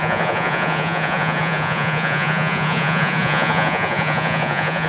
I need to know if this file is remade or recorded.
remade